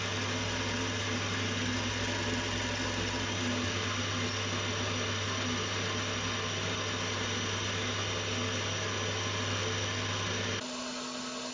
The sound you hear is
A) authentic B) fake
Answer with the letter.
A